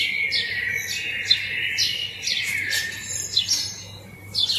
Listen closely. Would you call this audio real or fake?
real